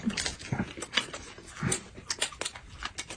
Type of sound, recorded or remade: recorded